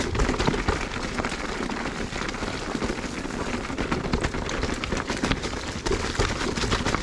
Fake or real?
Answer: real